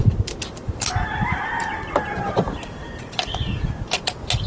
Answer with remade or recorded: remade